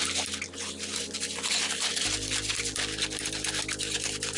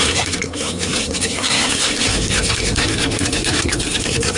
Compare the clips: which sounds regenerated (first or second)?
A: second